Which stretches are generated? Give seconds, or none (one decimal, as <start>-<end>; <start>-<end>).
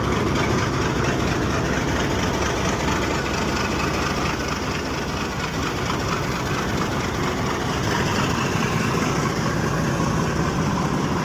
none